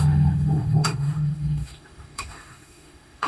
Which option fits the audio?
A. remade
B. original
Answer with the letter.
A